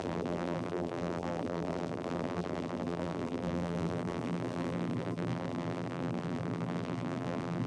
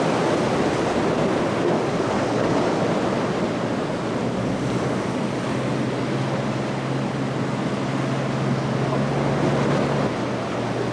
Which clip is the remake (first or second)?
first